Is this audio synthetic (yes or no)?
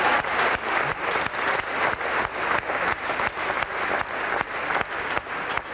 no